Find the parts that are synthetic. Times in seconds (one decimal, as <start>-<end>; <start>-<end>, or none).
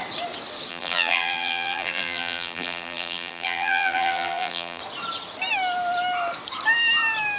0.7-4.8